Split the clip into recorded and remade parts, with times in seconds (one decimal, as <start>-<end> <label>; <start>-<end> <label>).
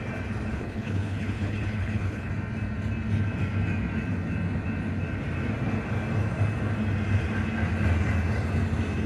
0.0-0.5 recorded; 0.5-2.3 remade; 2.3-9.1 recorded